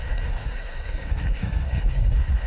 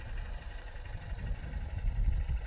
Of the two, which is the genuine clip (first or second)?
second